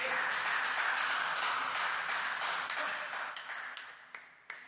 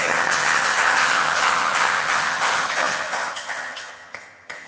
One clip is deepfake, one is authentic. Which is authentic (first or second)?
first